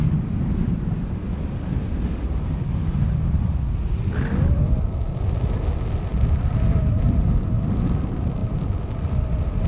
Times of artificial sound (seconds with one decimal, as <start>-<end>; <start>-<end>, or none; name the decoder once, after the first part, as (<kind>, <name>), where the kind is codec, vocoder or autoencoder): none

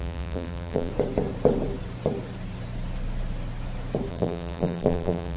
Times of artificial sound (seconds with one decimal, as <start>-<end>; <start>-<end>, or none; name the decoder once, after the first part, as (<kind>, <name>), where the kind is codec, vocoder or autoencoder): 0.0-0.9 (vocoder, BigVGAN v2); 4.1-5.4

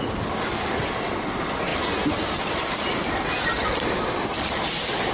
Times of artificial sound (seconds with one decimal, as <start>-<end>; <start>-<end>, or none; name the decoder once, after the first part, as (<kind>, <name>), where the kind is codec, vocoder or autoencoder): none

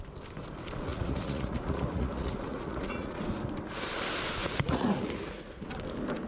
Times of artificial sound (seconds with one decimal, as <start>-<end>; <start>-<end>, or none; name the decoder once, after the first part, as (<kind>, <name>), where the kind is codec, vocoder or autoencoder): 0.9-3.2 (vocoder, Vocos); 4.4-5.6

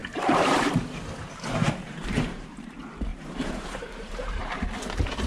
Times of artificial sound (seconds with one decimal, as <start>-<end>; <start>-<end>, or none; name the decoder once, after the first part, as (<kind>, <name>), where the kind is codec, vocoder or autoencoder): 0.0-0.7 (vocoder, BigVGAN v2); 1.6-2.5; 3.1-4.6

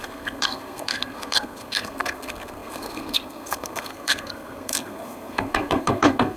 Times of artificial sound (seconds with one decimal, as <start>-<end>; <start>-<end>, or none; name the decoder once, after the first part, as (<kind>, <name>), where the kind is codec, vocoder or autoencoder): 0.0-6.4 (codec, SNAC)

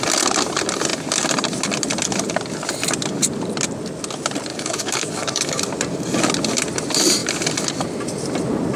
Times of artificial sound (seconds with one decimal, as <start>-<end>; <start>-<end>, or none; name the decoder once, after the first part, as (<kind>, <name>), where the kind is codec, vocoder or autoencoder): 4.5-5.6 (codec, DAC)

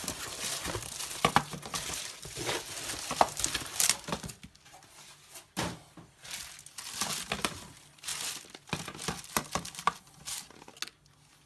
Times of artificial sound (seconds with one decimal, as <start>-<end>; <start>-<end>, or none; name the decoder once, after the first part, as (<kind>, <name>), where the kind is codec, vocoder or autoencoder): none